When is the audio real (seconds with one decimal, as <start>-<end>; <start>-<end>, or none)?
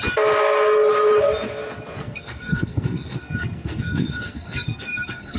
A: 0.0-2.0